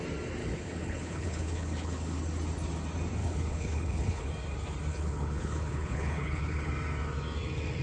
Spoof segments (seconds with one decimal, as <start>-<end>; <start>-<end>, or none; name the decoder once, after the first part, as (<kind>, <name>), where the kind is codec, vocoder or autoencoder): 0.4-2.2 (codec, HILCodec); 3.2-4.3; 4.9-6.7